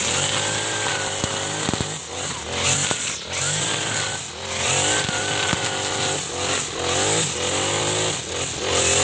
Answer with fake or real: real